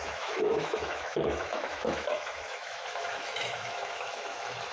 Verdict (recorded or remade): remade